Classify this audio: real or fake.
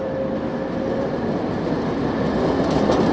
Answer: real